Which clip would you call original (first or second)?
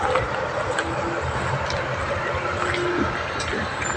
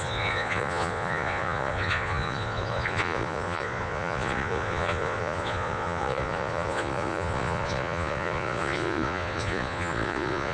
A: first